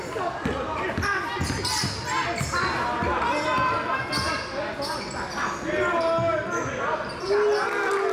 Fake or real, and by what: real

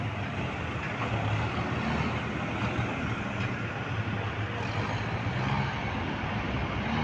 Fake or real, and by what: real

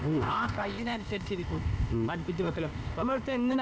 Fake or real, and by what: fake, codec, ZipCodec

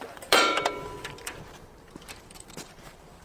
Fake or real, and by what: fake, vocoder, BigVGAN v2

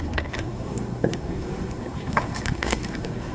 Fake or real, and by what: fake, codec, SNAC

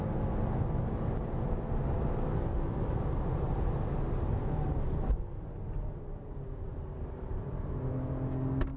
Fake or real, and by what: real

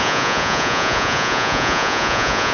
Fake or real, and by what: fake, vocoder, Vocos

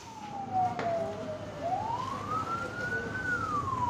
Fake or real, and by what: real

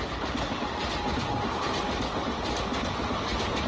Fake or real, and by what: real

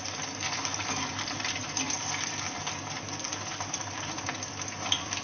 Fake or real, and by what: real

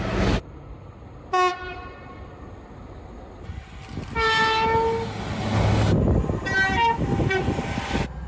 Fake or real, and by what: real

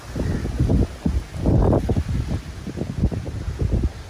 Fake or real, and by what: real